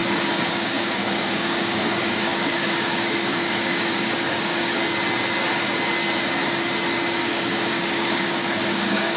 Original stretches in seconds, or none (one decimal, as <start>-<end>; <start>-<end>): 0.0-0.5; 4.8-7.2